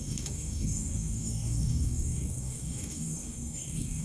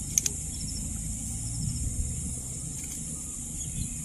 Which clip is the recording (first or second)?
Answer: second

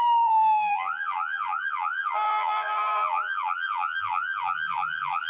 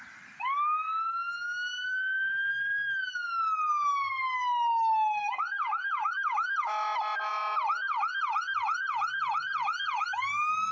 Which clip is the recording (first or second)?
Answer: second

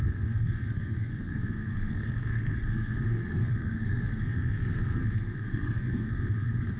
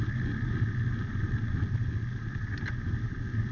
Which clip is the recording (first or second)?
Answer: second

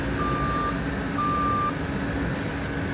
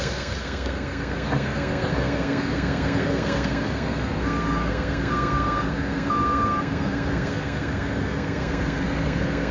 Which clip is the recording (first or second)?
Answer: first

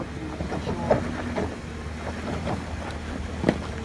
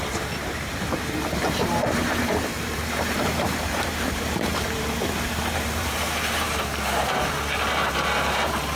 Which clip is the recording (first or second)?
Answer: first